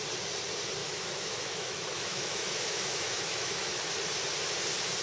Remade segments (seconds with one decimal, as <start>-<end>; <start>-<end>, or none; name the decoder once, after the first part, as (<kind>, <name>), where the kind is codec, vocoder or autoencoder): 0.8-3.8 (autoencoder, DAC-VAE)